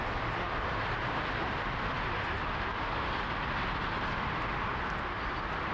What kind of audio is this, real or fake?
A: real